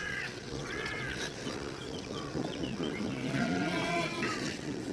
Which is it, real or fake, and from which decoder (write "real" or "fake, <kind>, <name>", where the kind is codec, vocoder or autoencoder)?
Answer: fake, vocoder, WaveNeXt